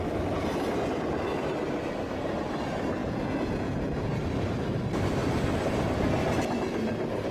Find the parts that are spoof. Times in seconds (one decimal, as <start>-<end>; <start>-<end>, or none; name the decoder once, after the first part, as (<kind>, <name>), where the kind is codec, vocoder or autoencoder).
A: 3.0-3.8 (vocoder, Vocos)